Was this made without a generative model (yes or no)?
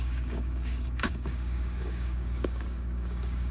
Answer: no